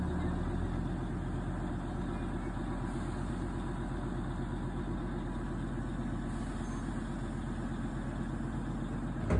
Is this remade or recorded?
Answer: recorded